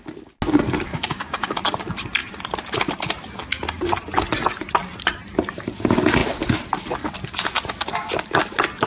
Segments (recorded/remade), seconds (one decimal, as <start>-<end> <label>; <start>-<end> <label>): 0.0-0.9 recorded; 0.9-1.6 remade; 1.6-8.9 recorded